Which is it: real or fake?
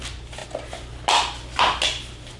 real